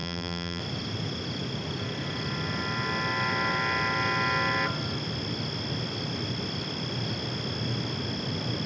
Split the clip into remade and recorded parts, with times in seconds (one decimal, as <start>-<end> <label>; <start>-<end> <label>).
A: 0.0-0.6 remade; 0.6-8.7 recorded